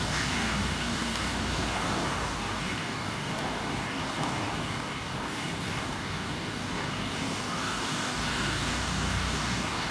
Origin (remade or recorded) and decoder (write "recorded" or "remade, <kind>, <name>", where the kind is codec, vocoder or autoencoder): remade, codec, DAC